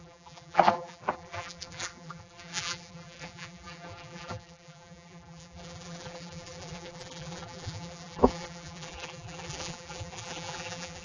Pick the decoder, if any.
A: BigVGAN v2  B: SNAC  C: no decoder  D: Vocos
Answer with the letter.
A